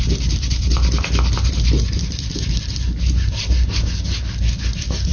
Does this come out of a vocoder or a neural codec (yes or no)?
no